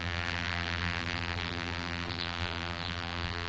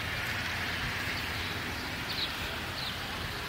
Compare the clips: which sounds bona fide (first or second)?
second